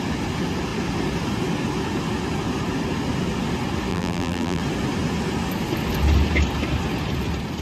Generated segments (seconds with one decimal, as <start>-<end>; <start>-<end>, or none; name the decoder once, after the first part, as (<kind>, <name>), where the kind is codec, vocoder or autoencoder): 3.9-4.6 (vocoder, BigVGAN v2)